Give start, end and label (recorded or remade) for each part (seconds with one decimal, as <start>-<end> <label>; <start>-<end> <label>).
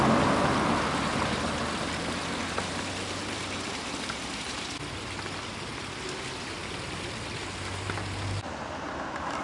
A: 0.0-9.4 recorded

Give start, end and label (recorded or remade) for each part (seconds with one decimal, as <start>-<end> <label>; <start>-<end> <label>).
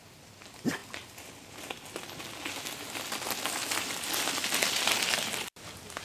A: 0.0-6.0 recorded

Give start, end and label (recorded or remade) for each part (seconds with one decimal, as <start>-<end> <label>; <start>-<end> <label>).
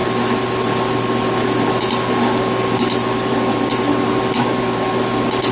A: 0.0-5.5 recorded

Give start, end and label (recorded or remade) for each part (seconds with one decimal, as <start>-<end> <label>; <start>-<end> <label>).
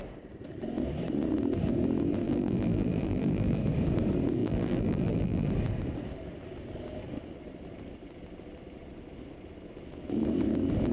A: 0.0-2.2 recorded; 2.2-3.6 remade; 3.6-4.4 recorded; 4.4-5.5 remade; 5.5-10.9 recorded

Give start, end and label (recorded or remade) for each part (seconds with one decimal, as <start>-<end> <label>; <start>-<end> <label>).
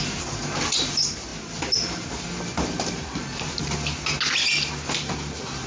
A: 0.0-5.7 recorded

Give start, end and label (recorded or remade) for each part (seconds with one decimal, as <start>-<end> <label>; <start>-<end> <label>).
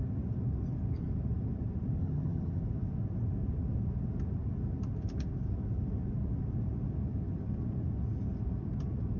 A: 0.0-2.0 recorded; 2.0-2.6 remade; 2.6-9.2 recorded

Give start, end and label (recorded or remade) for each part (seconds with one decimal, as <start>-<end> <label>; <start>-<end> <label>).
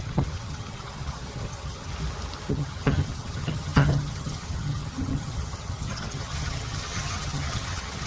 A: 0.0-1.9 remade; 1.9-2.5 recorded; 2.5-8.1 remade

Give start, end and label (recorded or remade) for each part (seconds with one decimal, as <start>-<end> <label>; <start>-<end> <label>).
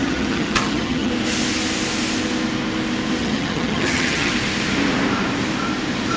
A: 0.0-1.1 remade; 1.1-3.2 recorded; 3.2-4.3 remade; 4.3-6.2 recorded